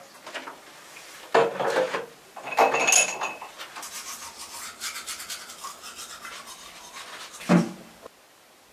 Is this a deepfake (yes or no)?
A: no